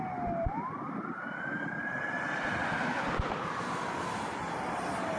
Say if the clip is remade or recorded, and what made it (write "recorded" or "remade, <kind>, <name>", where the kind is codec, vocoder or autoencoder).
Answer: recorded